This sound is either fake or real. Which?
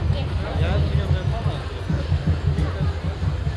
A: real